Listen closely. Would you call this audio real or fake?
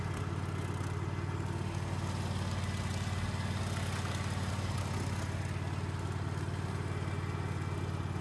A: real